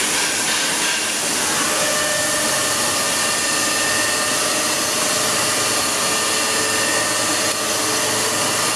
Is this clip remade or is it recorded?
recorded